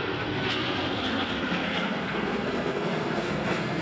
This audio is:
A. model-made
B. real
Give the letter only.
A